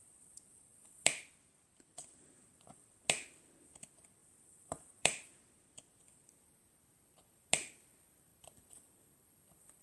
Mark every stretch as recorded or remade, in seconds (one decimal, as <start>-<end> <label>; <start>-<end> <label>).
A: 0.0-4.2 recorded; 4.2-5.4 remade; 5.4-9.8 recorded